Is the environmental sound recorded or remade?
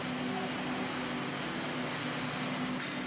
recorded